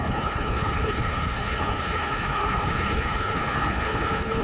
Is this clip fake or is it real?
fake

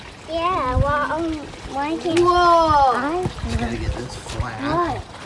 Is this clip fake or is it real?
real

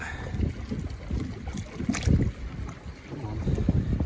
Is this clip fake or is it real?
real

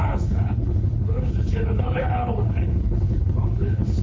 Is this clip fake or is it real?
fake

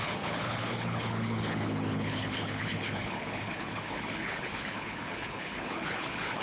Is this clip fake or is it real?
fake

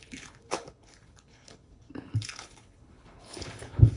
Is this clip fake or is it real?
fake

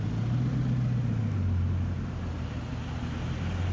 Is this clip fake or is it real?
real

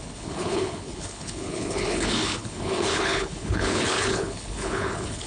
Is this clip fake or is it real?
fake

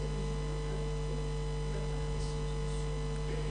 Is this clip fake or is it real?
real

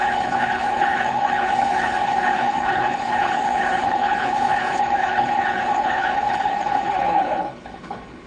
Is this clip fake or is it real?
fake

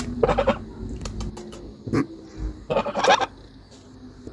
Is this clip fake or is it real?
real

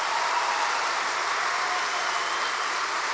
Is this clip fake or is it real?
real